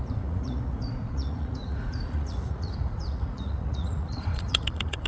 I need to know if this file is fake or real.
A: fake